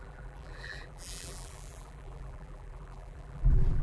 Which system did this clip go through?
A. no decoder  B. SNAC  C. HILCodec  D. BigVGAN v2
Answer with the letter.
D